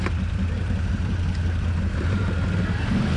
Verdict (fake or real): real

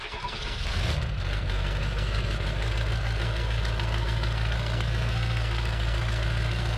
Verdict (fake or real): fake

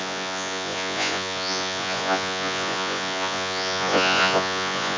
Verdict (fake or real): fake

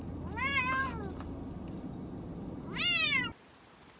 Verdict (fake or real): real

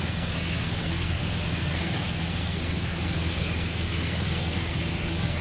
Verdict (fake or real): fake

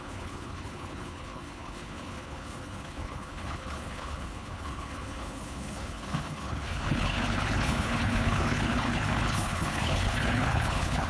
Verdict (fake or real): fake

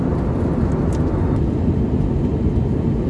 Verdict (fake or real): real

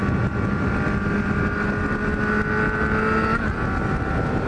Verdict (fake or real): real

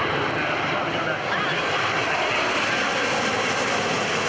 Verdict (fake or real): real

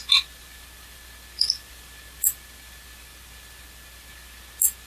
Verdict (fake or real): real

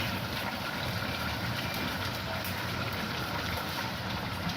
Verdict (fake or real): fake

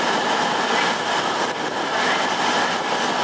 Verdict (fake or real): real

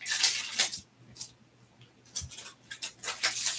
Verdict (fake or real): real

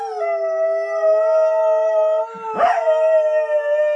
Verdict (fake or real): real